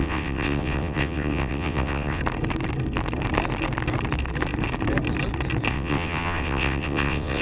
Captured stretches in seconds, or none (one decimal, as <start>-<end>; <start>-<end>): 2.2-5.7